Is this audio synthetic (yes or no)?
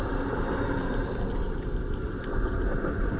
no